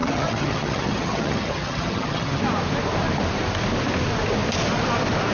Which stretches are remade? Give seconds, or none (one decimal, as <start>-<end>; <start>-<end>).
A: 0.0-2.4